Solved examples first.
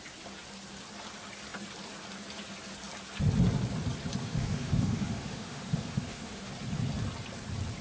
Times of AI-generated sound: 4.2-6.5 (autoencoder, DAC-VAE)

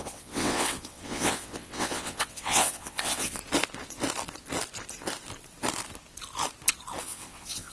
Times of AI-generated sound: 0.0-3.4 (vocoder, WaveNeXt); 7.0-7.7

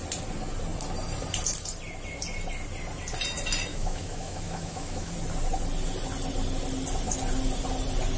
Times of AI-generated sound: 3.7-5.1 (autoencoder, DAC-VAE)

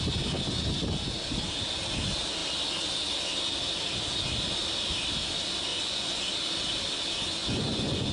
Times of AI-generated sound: 5.7-6.2 (vocoder, Vocos); 7.4-8.1

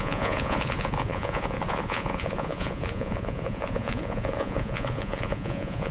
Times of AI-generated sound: 0.0-5.9 (vocoder, Vocos)

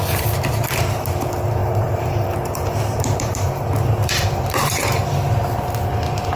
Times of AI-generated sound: 1.6-5.1 (vocoder, BigVGAN v2)